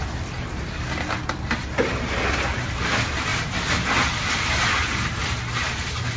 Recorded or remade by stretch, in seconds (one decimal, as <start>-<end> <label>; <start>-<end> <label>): 0.0-6.2 recorded